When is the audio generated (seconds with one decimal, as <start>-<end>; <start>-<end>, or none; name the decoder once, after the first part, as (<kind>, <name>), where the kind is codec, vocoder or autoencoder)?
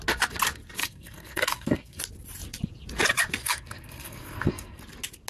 0.8-2.0 (codec, SNAC); 3.4-4.8